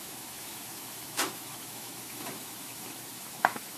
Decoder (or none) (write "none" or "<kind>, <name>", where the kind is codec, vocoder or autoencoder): autoencoder, DAC-VAE